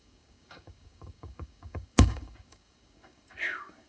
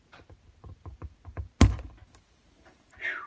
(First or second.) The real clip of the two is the second